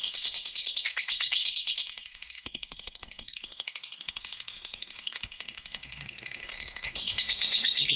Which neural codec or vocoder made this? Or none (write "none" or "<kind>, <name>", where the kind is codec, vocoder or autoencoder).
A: codec, SNAC